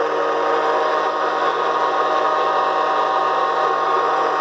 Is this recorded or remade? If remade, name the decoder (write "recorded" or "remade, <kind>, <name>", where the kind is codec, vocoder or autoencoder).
recorded